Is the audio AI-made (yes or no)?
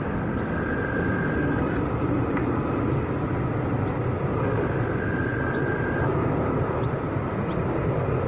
yes